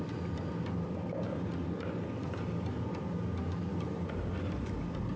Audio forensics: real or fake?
real